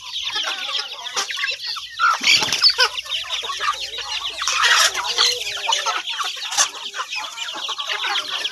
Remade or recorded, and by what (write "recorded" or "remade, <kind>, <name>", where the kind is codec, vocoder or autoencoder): recorded